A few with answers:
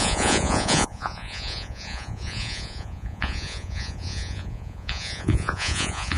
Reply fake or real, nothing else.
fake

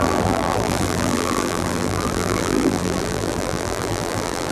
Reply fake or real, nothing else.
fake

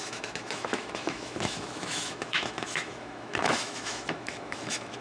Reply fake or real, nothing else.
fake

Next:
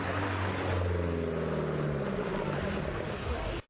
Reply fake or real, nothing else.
real